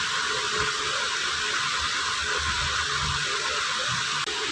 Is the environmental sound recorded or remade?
recorded